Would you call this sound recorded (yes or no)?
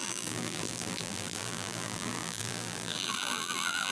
no